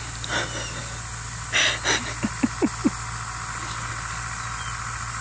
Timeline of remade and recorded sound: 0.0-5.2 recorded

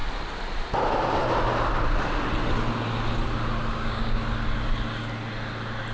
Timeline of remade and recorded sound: 0.0-3.7 recorded; 3.7-4.2 remade; 4.2-5.9 recorded

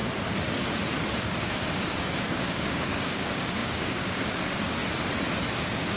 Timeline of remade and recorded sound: 0.0-1.2 recorded; 1.2-4.8 remade; 4.8-5.5 recorded; 5.5-6.0 remade

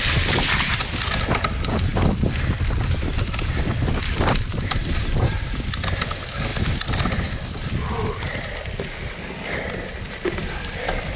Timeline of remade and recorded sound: 0.0-11.2 recorded